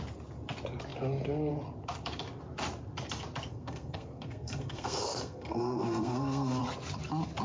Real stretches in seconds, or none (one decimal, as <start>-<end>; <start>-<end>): 0.0-3.5; 6.6-7.4